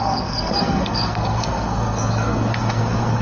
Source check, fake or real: fake